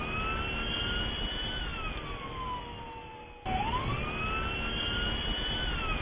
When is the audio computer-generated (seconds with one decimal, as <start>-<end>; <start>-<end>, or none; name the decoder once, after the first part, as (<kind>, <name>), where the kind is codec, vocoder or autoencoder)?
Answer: none